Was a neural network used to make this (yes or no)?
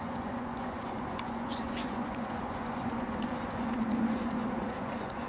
yes